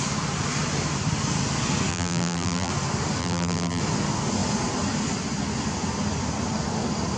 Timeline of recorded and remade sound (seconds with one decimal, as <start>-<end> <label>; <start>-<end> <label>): 0.0-1.9 recorded; 1.9-2.7 remade; 2.7-3.2 recorded; 3.2-3.8 remade; 3.8-7.2 recorded